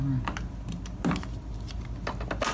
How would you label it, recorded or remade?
recorded